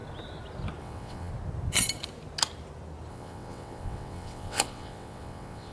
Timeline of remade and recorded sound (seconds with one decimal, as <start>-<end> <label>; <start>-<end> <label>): 0.0-0.8 recorded; 0.8-1.3 remade; 1.3-3.1 recorded; 3.1-5.7 remade